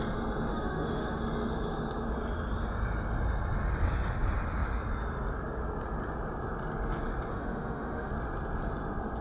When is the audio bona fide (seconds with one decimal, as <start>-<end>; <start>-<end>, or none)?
0.0-0.5; 1.2-7.3; 8.1-9.2